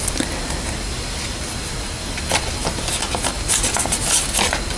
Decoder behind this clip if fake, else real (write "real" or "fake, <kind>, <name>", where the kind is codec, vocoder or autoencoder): real